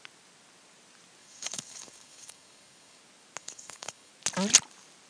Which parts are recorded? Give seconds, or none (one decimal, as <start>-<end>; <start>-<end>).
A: 0.0-1.2; 3.0-3.4; 4.1-5.1